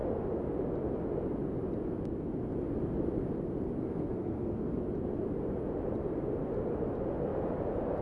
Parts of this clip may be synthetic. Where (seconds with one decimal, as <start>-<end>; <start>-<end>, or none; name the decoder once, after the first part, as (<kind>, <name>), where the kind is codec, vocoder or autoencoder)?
3.8-4.8 (codec, SNAC)